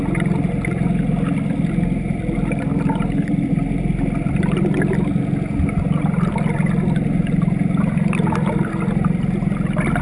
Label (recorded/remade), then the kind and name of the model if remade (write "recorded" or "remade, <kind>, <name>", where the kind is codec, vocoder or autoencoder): recorded